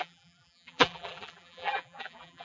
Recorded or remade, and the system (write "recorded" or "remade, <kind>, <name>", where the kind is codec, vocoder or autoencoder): remade, vocoder, BigVGAN v2